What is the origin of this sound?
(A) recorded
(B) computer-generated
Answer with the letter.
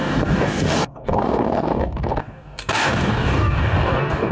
B